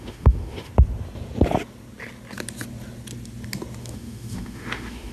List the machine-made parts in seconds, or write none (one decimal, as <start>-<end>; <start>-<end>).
0.0-0.7; 3.8-5.1